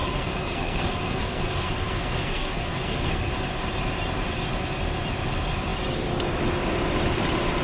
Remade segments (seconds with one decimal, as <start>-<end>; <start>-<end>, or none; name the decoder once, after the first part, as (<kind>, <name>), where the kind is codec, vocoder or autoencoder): 0.0-3.3 (codec, SNAC)